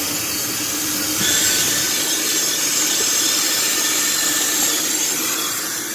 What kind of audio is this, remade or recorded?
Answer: recorded